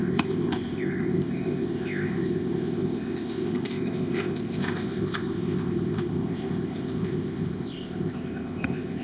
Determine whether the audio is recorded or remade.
remade